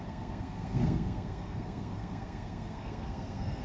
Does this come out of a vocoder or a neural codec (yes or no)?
yes